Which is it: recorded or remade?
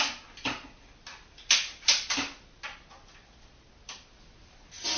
recorded